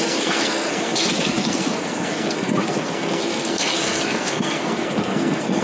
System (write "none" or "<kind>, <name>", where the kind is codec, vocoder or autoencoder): codec, SNAC